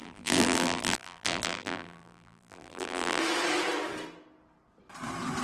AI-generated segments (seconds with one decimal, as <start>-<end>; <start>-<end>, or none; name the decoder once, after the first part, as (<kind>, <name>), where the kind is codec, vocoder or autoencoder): 0.0-3.2 (vocoder, BigVGAN v2)